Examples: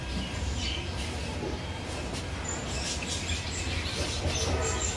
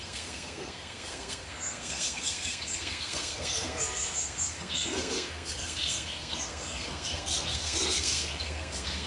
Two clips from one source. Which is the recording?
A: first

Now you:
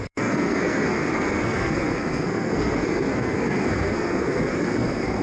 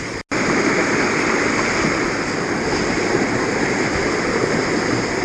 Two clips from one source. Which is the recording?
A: second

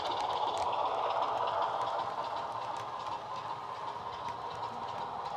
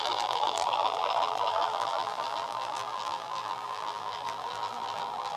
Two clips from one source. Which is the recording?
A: first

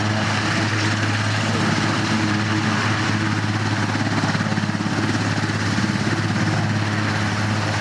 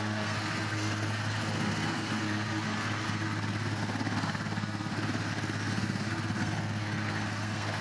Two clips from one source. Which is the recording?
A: first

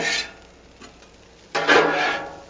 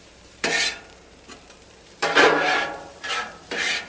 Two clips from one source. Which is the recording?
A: first